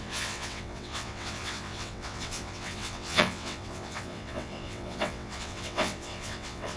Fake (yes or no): yes